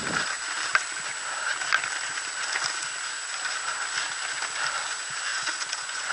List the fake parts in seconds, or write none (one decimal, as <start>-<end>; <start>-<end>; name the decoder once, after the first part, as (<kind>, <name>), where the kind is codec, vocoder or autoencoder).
5.3-6.1 (vocoder, Vocos)